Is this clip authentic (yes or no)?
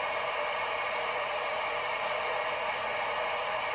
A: yes